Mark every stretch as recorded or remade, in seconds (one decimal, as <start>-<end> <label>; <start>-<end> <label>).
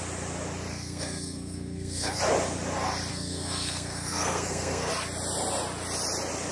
0.0-0.7 recorded; 0.7-2.2 remade; 2.2-3.1 recorded; 3.1-4.9 remade; 4.9-6.5 recorded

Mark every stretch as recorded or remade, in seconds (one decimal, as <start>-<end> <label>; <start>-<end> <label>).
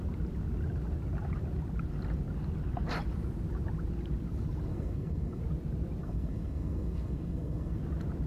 0.0-4.7 recorded; 4.7-5.4 remade; 5.4-6.0 recorded; 6.0-7.8 remade; 7.8-8.3 recorded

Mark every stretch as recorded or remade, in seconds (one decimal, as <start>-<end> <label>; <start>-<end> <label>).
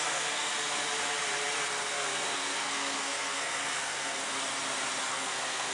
0.0-0.4 remade; 0.4-1.9 recorded; 1.9-4.2 remade; 4.2-5.1 recorded; 5.1-5.7 remade